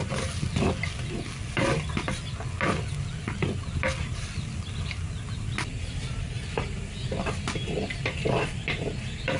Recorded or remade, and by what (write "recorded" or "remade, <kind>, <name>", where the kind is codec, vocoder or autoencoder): recorded